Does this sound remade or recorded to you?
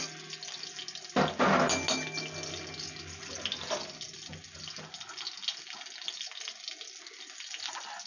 recorded